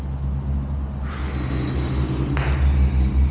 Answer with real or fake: real